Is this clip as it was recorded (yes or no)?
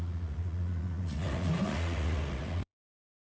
no